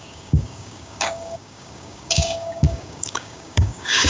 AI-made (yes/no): yes